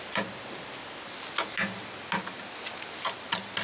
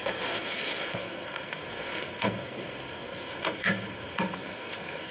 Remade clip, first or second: second